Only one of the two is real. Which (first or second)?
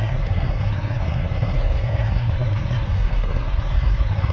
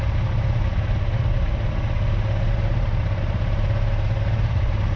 second